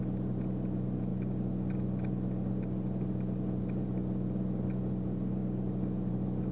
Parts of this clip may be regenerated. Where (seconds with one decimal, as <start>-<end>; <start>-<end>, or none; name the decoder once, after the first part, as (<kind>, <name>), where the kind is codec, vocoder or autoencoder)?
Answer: none